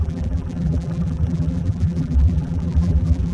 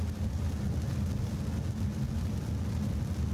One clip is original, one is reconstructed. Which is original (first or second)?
second